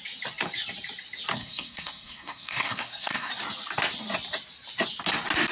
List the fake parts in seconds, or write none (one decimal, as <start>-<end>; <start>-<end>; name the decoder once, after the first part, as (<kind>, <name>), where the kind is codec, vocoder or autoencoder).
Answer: 1.4-3.3 (codec, SNAC)